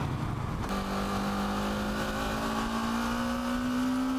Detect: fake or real real